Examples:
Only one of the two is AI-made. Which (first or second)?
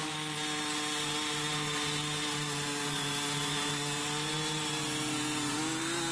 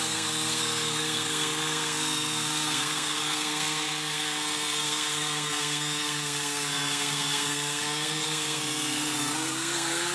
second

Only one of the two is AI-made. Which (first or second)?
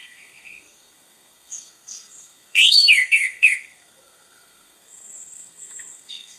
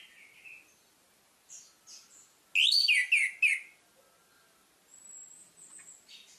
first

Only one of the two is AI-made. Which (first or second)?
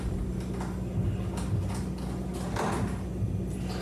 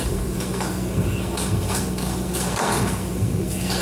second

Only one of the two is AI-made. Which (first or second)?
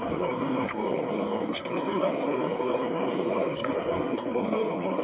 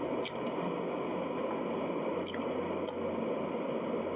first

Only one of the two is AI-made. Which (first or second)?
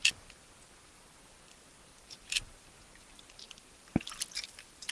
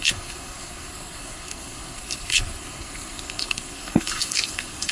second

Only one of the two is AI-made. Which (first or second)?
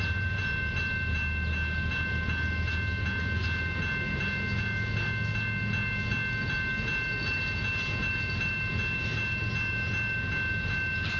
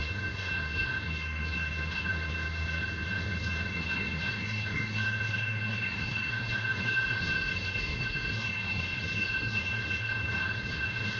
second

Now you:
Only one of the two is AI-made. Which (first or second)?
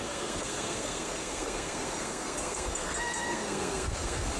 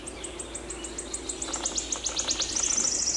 first